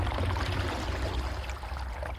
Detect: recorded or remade recorded